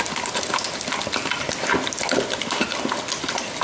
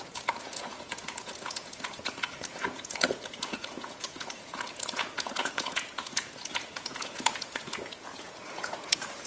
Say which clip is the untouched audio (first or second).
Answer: first